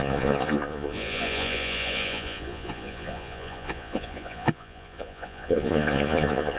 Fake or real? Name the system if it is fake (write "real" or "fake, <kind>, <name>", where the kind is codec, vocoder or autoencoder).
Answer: fake, vocoder, Vocos